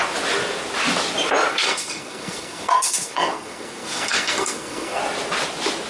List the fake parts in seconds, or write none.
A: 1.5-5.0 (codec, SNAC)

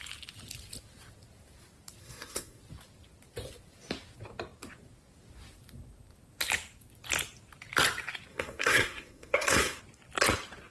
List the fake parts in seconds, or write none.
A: 2.0-2.6 (codec, SNAC); 8.3-9.8

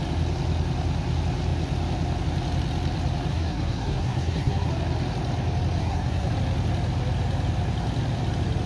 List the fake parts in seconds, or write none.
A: 3.3-4.7 (codec, SNAC); 5.8-6.3

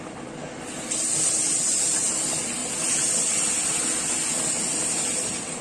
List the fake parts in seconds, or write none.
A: none

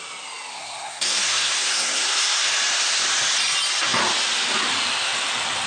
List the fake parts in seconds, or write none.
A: 0.5-2.5 (codec, SNAC)

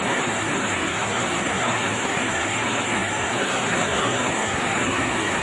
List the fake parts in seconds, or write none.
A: 0.0-5.4 (codec, SNAC)

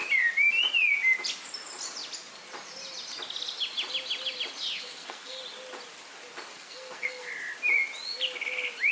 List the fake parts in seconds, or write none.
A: 4.8-5.4 (codec, SNAC); 6.5-7.3